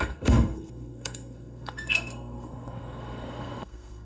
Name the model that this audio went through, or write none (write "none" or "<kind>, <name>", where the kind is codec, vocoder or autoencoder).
codec, SNAC